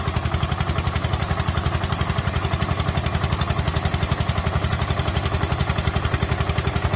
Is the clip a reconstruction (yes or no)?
no